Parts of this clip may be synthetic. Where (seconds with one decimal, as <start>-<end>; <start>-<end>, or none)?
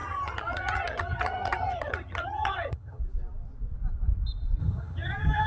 0.0-3.0; 4.6-5.5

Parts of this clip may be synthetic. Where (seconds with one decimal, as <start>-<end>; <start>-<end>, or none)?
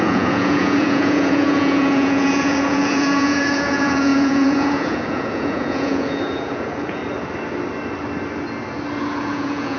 0.0-7.0; 9.0-9.8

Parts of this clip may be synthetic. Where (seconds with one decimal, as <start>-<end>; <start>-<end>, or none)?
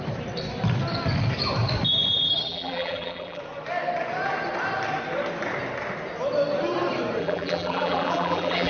2.5-3.4; 7.2-8.7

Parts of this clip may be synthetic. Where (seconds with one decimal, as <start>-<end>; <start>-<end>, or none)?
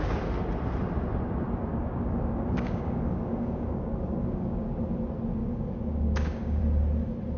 1.7-4.7; 5.4-6.6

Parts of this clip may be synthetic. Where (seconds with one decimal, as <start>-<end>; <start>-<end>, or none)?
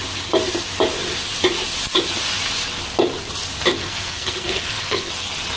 3.8-5.1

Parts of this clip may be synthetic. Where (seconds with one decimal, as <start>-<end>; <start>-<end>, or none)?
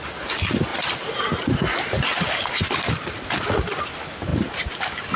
0.0-0.7; 3.8-4.3; 4.8-5.2